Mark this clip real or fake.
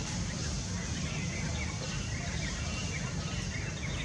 real